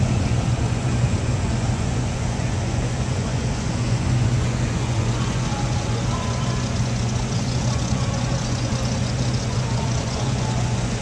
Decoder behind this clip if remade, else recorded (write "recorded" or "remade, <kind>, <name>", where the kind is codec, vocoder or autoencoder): remade, vocoder, Vocos